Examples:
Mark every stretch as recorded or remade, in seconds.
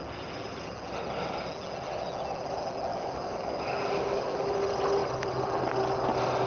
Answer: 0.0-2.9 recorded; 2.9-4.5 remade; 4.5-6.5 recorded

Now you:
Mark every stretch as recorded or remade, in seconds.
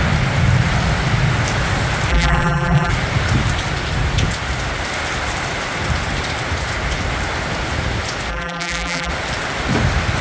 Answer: 0.0-2.1 recorded; 2.1-2.9 remade; 2.9-8.3 recorded; 8.3-9.1 remade; 9.1-10.2 recorded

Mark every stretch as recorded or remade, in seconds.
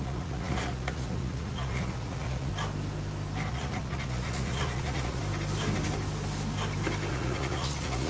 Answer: 0.0-2.5 remade; 2.5-3.5 recorded; 3.5-5.2 remade; 5.2-7.1 recorded; 7.1-8.1 remade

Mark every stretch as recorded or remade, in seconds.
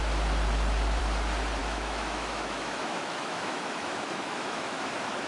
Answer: 0.0-1.6 recorded; 1.6-4.8 remade; 4.8-5.3 recorded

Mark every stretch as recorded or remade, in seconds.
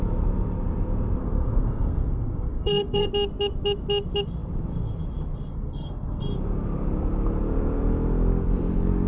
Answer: 0.0-1.2 recorded; 1.2-3.1 remade; 3.1-5.5 recorded; 5.5-6.2 remade; 6.2-9.1 recorded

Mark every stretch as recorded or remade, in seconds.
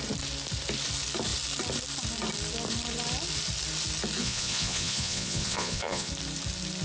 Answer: 0.0-4.2 recorded; 4.2-6.1 remade; 6.1-6.8 recorded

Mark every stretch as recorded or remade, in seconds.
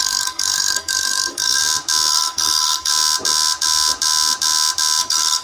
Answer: 0.0-1.6 remade; 1.6-2.1 recorded; 2.1-2.9 remade; 2.9-5.0 recorded; 5.0-5.4 remade